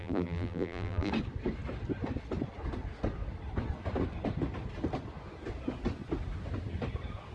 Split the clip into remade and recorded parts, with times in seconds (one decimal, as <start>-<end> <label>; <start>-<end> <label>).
0.0-1.1 remade; 1.1-7.3 recorded